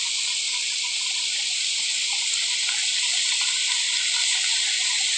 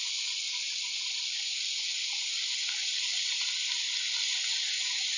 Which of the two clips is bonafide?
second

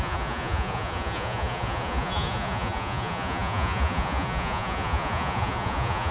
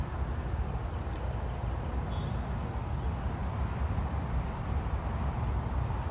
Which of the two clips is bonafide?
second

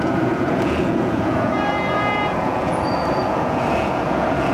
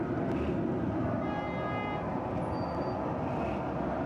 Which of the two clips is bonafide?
second